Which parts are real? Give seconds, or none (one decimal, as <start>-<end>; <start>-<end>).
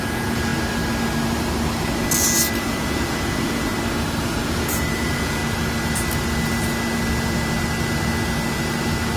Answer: 0.5-2.6; 3.7-4.2; 5.4-9.2